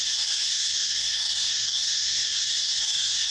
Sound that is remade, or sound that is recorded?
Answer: remade